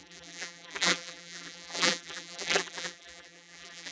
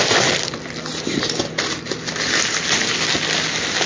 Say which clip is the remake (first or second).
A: first